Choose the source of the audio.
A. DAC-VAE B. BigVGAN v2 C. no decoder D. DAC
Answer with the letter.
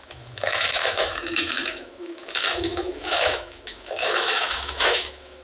A